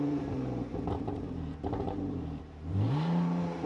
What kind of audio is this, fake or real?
fake